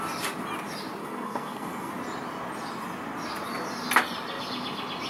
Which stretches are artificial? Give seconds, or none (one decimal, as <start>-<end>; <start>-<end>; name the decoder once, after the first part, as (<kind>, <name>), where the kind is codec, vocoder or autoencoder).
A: 1.0-1.9 (codec, SNAC)